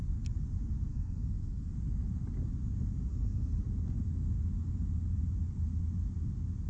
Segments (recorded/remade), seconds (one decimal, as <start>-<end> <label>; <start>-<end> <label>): 0.0-0.9 recorded; 0.9-1.7 remade; 1.7-3.1 recorded; 3.1-3.6 remade; 3.6-6.7 recorded